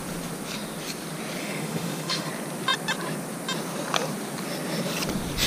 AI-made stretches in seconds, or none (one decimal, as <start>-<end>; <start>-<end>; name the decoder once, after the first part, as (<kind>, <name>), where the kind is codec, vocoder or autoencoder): 1.4-2.3 (autoencoder, DAC-VAE)